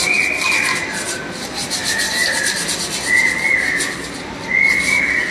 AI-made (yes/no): no